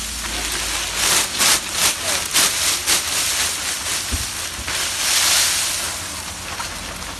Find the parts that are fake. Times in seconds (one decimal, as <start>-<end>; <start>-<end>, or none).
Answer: none